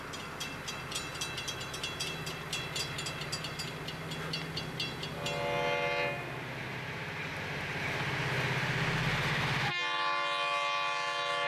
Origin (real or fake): real